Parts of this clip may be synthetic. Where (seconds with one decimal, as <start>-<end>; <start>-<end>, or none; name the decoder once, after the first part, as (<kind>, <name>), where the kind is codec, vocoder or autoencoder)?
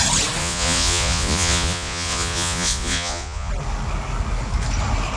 0.4-3.5 (vocoder, Vocos)